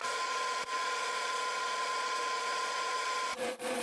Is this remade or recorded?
remade